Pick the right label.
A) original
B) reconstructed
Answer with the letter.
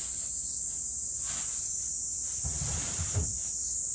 A